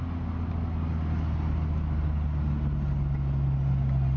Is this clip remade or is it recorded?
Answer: recorded